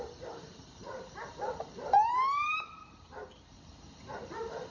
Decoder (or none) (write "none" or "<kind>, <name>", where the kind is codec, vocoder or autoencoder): vocoder, BigVGAN v2